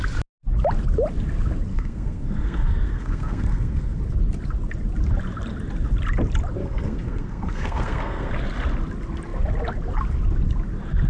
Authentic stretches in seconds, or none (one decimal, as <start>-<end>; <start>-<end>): 0.0-1.7; 4.0-6.6; 8.3-11.1